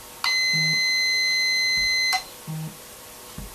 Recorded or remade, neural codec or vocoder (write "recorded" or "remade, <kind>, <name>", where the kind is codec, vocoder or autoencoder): recorded